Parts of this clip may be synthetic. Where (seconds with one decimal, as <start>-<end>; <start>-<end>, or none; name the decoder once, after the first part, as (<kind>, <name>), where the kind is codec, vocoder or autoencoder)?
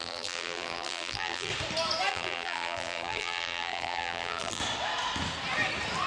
0.0-1.5 (vocoder, BigVGAN v2); 2.1-4.6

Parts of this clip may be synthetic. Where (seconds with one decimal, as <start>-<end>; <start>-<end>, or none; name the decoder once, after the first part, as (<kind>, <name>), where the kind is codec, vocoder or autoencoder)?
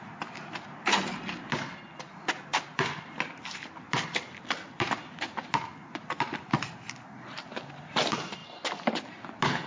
2.5-4.9 (vocoder, BigVGAN v2); 8.4-9.1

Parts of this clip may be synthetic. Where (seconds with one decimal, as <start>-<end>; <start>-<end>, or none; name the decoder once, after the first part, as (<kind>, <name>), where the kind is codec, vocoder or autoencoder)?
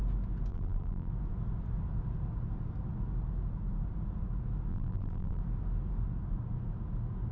0.5-1.1 (vocoder, BigVGAN v2); 4.7-5.4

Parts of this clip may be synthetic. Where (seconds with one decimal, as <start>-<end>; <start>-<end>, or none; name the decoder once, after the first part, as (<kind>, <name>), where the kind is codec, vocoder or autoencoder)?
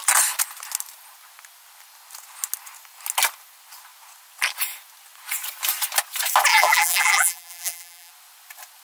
6.5-8.1 (vocoder, BigVGAN v2)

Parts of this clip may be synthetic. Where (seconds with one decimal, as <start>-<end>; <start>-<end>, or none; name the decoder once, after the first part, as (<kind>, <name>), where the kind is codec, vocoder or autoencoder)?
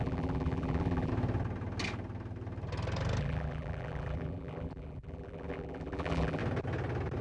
0.0-1.1 (vocoder, BigVGAN v2); 3.2-6.4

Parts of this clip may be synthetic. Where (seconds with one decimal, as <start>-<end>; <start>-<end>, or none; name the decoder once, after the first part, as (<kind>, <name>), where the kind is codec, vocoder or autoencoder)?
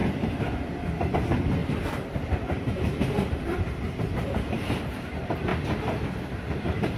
1.6-5.1 (vocoder, BigVGAN v2); 5.5-7.0